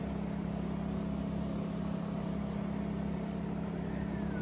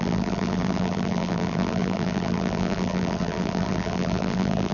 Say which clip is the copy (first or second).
second